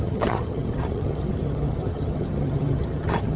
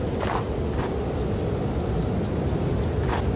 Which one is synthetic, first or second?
first